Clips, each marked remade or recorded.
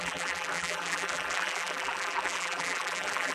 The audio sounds remade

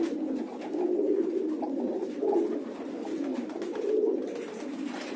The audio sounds recorded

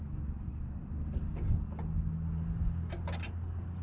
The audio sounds recorded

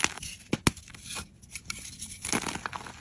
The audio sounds recorded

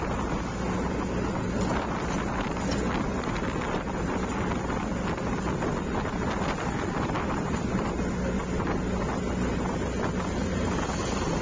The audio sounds recorded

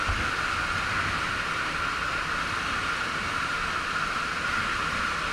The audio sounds recorded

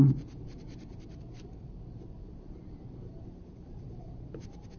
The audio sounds remade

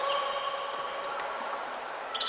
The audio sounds recorded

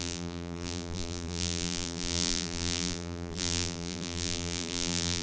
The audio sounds remade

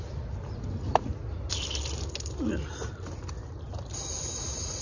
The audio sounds recorded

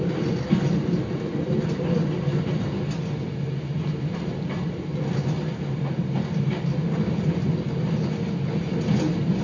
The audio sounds recorded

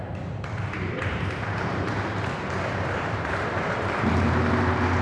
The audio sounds remade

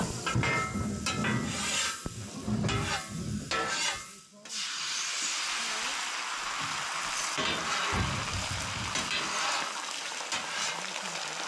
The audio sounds recorded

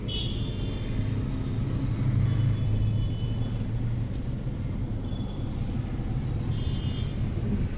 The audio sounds recorded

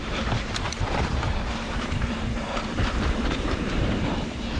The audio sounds remade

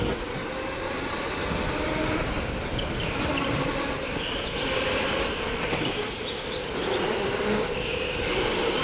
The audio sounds remade